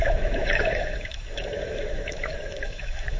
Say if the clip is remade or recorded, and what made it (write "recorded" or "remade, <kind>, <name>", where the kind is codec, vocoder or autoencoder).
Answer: remade, autoencoder, DAC-VAE